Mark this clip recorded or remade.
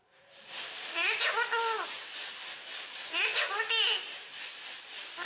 recorded